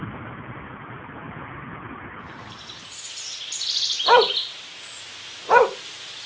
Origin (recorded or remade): recorded